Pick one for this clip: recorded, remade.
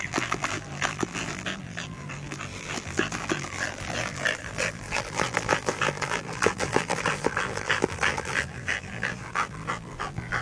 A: remade